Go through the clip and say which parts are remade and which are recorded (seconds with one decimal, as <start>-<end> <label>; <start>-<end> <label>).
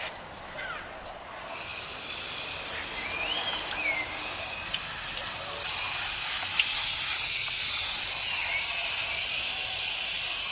0.0-10.5 recorded